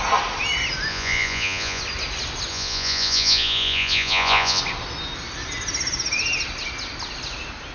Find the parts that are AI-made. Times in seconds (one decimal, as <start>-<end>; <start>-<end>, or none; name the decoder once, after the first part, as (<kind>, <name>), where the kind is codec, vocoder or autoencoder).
0.9-1.8 (vocoder, Vocos); 2.5-4.6